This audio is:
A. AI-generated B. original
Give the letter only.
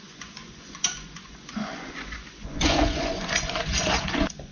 A